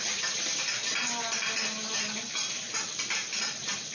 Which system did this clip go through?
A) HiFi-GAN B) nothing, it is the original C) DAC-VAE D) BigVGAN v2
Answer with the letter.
B